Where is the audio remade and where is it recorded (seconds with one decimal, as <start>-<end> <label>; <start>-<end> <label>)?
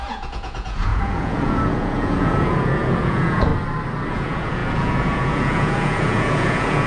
0.0-3.5 remade; 3.5-4.1 recorded; 4.1-6.9 remade